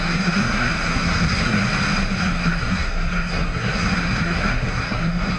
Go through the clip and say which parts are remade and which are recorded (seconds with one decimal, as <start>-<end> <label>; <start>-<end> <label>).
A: 0.0-1.6 remade; 1.6-2.2 recorded; 2.2-5.4 remade